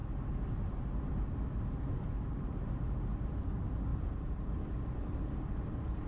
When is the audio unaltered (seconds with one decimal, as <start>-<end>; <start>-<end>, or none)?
0.0-6.1